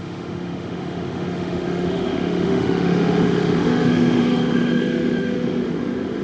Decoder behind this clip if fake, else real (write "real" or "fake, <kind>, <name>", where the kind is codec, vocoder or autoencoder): fake, autoencoder, DAC-VAE